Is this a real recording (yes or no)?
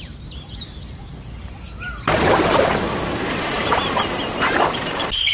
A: no